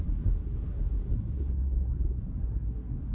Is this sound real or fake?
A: fake